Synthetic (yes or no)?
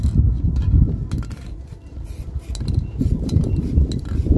no